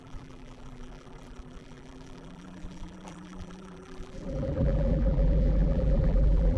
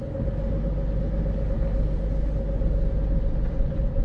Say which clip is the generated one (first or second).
first